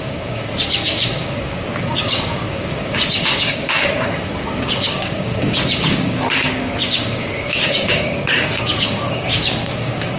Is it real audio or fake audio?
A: fake